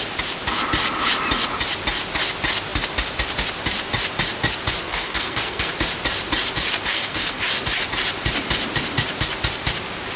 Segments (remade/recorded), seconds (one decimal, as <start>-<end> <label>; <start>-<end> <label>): 0.0-4.8 recorded; 4.8-5.7 remade; 5.7-6.9 recorded; 6.9-7.4 remade; 7.4-10.2 recorded